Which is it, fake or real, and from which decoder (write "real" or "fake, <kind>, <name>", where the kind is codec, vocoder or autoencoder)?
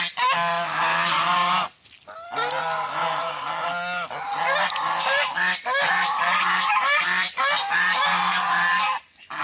real